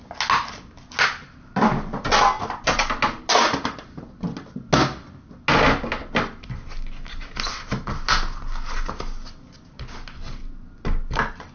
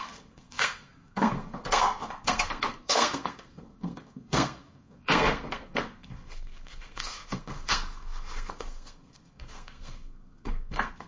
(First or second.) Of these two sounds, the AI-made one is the second